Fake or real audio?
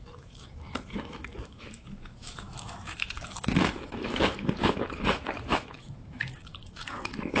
fake